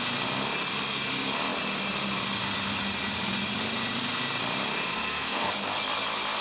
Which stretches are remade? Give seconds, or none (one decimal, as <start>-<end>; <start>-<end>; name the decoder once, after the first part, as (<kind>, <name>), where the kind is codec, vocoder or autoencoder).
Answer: 4.9-5.5 (codec, SNAC)